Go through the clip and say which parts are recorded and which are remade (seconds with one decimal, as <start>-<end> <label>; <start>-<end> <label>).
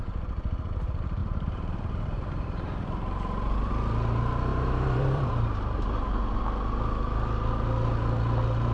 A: 0.0-1.2 recorded; 1.2-3.7 remade; 3.7-4.5 recorded; 4.5-6.4 remade; 6.4-8.7 recorded